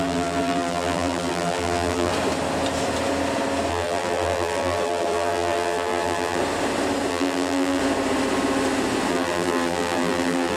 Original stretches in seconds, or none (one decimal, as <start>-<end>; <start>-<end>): 2.1-3.7; 6.4-7.1; 7.8-9.1